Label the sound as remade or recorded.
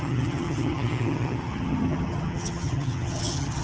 remade